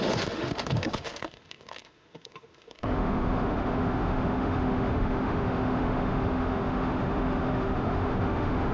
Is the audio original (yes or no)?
no